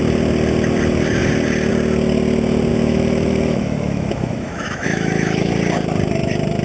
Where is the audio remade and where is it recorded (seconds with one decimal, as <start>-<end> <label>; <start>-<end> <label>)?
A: 0.0-2.7 recorded; 2.7-5.5 remade; 5.5-6.6 recorded